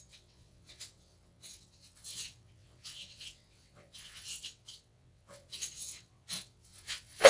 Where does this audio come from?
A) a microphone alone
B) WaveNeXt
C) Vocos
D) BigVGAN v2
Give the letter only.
B